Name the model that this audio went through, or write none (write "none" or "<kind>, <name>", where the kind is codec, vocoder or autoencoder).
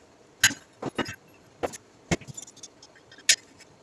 none